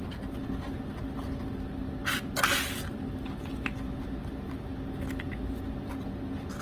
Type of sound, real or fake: real